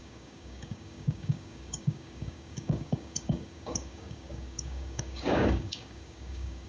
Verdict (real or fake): fake